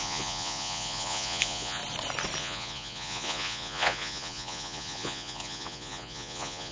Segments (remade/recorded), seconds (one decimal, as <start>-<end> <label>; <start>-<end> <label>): 0.0-1.8 remade; 1.8-2.4 recorded; 2.4-6.7 remade